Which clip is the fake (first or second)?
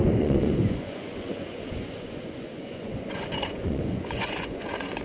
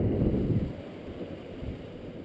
first